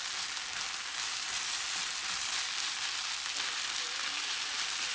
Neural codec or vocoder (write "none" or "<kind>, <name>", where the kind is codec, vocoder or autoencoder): none